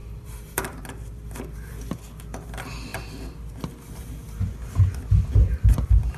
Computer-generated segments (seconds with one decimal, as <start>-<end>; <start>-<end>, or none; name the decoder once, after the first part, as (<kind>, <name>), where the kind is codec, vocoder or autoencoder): 0.0-0.8 (vocoder, BigVGAN v2)